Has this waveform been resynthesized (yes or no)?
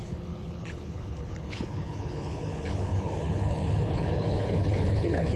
yes